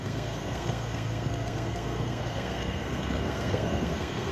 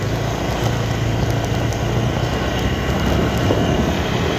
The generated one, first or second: first